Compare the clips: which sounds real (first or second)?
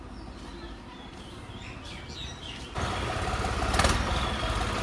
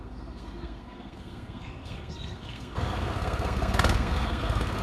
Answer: first